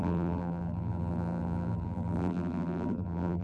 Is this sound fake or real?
fake